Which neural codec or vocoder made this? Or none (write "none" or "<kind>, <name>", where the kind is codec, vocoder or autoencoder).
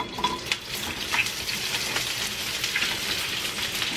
none